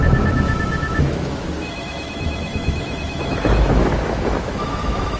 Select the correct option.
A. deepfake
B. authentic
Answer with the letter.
A